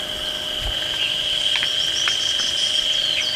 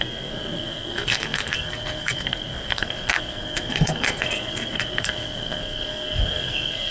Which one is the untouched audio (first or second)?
first